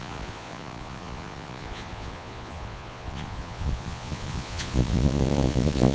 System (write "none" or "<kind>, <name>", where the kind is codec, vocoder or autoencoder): vocoder, Vocos